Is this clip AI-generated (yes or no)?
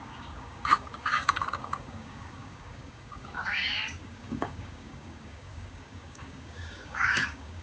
yes